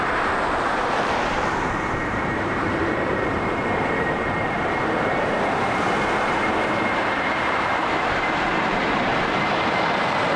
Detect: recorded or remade remade